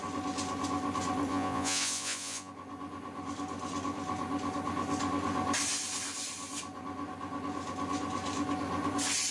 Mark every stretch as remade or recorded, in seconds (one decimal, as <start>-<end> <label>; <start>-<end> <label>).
0.0-1.3 recorded; 1.3-2.5 remade; 2.5-9.3 recorded